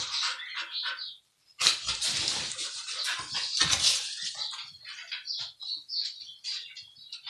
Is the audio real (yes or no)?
yes